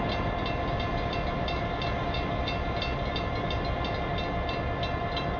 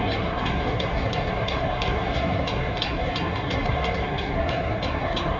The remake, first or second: second